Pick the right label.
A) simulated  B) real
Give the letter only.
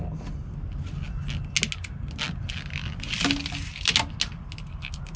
B